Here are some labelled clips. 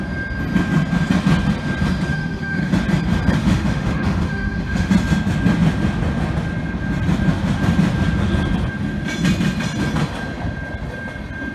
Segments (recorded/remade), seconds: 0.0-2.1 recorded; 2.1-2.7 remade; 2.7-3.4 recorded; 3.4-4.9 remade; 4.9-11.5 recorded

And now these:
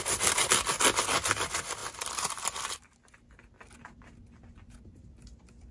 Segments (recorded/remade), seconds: 0.0-5.7 recorded

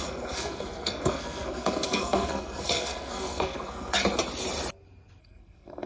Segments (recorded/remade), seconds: 0.0-4.0 remade; 4.0-5.2 recorded; 5.2-5.9 remade

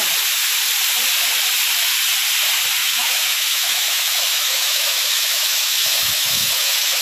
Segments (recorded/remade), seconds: 0.0-2.8 recorded; 2.8-7.0 remade

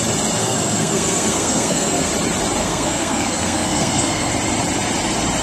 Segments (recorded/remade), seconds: 0.0-0.4 recorded; 0.4-2.1 remade; 2.1-2.6 recorded; 2.6-4.3 remade; 4.3-5.4 recorded

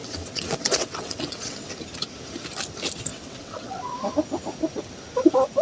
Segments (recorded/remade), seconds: 0.0-1.7 remade; 1.7-3.1 recorded; 3.1-3.8 remade; 3.8-5.6 recorded